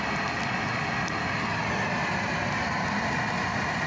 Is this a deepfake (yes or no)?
no